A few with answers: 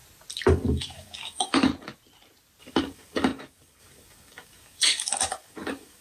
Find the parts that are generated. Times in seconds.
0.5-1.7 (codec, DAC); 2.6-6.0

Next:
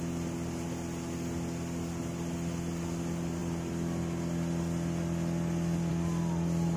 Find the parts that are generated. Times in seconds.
none